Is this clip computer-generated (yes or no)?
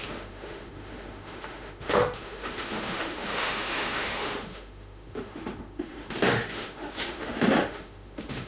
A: yes